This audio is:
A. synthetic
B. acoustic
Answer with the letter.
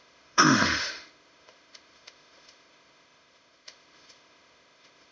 A